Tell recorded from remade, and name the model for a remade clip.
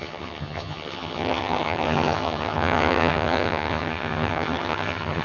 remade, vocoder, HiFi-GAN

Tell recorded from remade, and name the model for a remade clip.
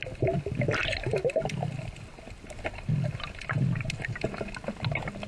recorded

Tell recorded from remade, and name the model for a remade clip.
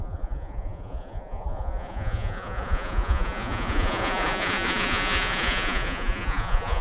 remade, vocoder, Vocos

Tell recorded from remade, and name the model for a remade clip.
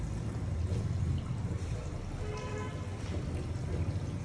recorded